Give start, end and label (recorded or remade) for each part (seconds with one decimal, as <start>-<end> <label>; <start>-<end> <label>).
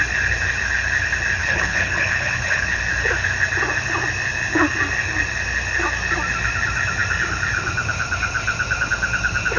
0.0-1.4 recorded; 1.4-2.8 remade; 2.8-9.6 recorded